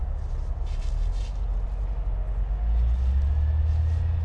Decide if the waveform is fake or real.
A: real